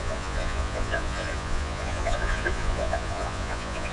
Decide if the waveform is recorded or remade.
remade